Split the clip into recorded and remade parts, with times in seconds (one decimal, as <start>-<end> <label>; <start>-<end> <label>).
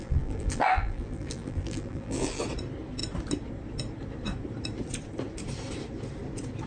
0.0-2.4 remade; 2.4-6.7 recorded